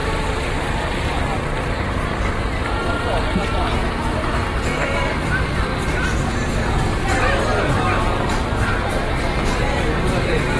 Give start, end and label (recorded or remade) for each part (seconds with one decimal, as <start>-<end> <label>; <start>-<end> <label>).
0.0-5.7 remade; 5.7-9.1 recorded; 9.1-10.6 remade